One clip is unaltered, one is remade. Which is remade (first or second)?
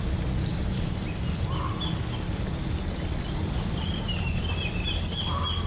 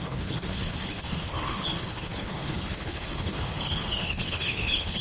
second